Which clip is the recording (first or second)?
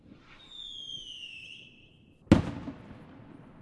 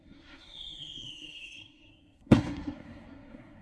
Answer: first